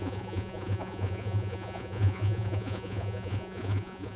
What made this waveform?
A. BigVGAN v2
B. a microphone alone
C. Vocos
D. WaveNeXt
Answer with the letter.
C